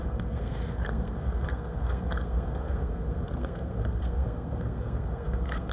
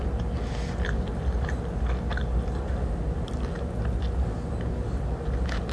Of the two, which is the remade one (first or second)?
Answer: first